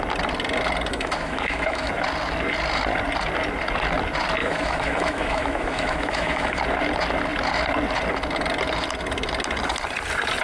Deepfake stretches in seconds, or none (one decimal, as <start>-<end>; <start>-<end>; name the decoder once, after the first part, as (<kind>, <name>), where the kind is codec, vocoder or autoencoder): 0.9-1.9 (autoencoder, DAC-VAE); 4.4-6.6